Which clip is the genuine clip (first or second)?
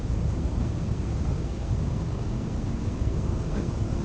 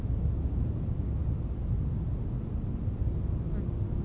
second